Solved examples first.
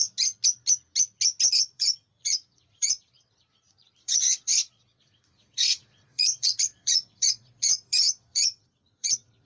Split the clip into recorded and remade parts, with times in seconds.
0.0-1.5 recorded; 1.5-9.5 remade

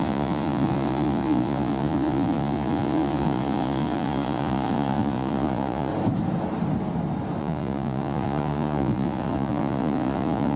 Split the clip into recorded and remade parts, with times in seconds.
0.0-5.9 remade; 5.9-7.4 recorded; 7.4-10.6 remade

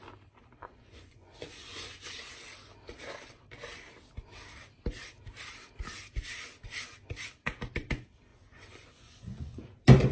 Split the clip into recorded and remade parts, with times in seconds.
0.0-0.6 recorded; 0.6-2.3 remade; 2.3-8.3 recorded; 8.3-9.6 remade; 9.6-10.1 recorded

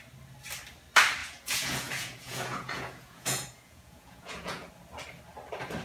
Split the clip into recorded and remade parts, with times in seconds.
0.0-1.2 recorded; 1.2-4.7 remade; 4.7-5.8 recorded

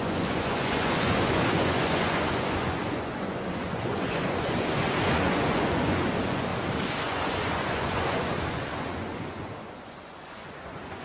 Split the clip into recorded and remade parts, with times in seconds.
0.0-6.5 remade; 6.5-7.0 recorded; 7.0-11.0 remade

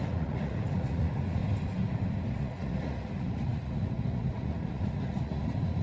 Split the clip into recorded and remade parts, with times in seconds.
0.0-1.4 remade; 1.4-2.3 recorded; 2.3-5.8 remade

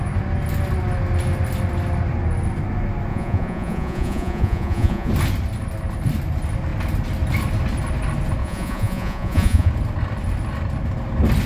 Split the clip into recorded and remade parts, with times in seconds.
0.0-3.1 recorded; 3.1-5.1 remade; 5.1-8.4 recorded; 8.4-9.7 remade; 9.7-11.5 recorded